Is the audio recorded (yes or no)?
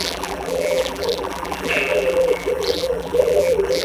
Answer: no